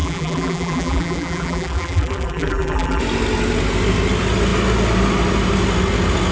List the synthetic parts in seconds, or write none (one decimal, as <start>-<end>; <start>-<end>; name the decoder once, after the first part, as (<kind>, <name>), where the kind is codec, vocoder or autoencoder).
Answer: 0.0-3.0 (vocoder, BigVGAN v2)